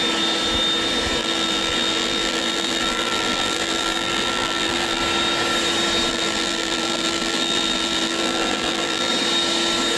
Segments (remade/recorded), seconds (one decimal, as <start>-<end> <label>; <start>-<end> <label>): 0.0-1.2 recorded; 1.2-5.0 remade; 5.0-6.1 recorded; 6.1-9.1 remade; 9.1-10.0 recorded